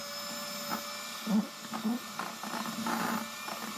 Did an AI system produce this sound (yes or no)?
no